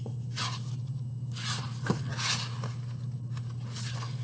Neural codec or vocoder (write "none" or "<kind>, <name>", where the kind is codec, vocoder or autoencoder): none